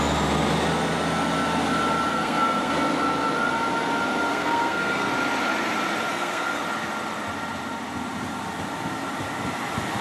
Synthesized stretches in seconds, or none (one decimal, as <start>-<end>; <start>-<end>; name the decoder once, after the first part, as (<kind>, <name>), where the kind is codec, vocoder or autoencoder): 2.1-2.7 (codec, SNAC); 4.3-5.1; 6.1-6.6